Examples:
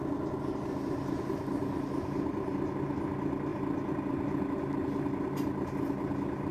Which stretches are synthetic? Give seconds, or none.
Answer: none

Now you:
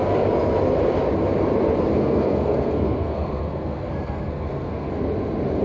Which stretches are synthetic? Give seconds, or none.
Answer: 1.9-4.9 (codec, SNAC)

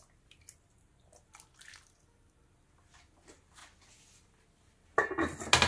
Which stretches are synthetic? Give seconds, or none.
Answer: none

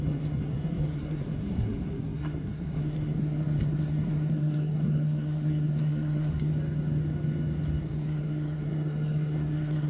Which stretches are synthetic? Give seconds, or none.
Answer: 0.0-6.5 (codec, SNAC); 7.8-9.9

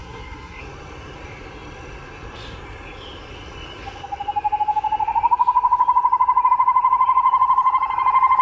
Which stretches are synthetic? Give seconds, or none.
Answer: 0.0-0.6 (codec, SNAC)

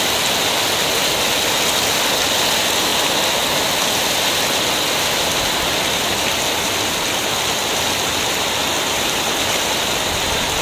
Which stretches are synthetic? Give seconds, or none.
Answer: none

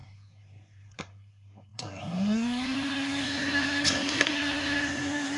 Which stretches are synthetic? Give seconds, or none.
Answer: 0.0-5.4 (codec, SNAC)